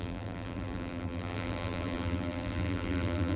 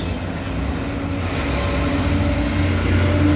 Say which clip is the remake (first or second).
first